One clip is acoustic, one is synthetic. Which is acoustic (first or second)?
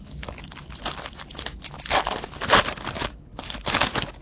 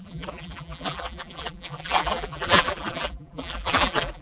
first